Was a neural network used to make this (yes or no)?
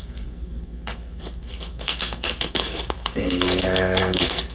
yes